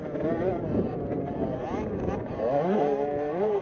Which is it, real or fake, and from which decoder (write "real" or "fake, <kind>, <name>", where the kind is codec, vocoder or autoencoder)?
fake, vocoder, BigVGAN v2